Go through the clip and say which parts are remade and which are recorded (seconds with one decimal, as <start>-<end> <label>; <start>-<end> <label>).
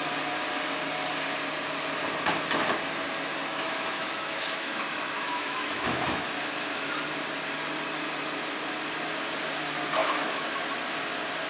0.0-3.5 recorded; 3.5-6.9 remade; 6.9-10.0 recorded; 10.0-10.6 remade; 10.6-11.5 recorded